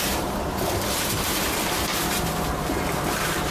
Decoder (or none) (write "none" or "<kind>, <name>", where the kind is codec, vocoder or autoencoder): vocoder, BigVGAN v2